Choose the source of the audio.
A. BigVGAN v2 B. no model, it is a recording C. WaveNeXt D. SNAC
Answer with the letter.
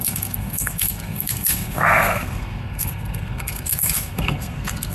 D